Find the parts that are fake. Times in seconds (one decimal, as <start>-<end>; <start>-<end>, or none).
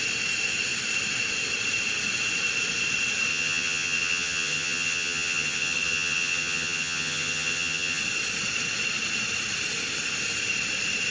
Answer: 3.3-8.0